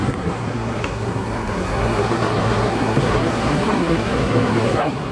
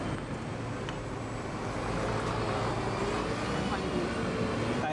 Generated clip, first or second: first